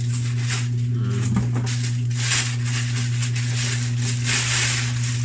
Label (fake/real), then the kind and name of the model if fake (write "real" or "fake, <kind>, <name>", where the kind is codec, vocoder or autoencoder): real